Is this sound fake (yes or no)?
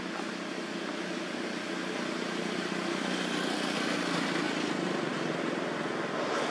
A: no